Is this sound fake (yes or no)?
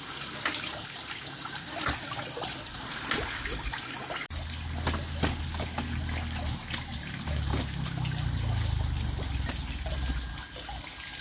no